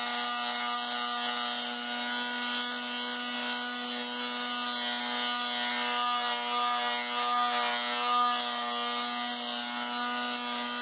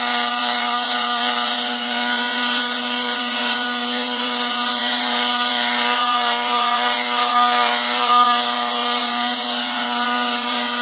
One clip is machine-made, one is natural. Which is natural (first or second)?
first